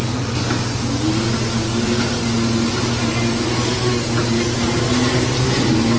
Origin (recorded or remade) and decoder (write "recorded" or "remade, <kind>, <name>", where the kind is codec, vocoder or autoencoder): recorded